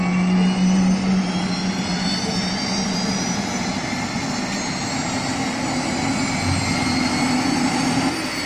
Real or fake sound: real